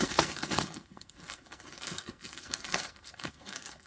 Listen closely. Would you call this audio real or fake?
fake